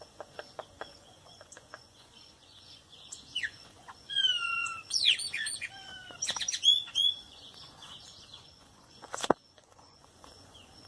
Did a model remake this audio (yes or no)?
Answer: yes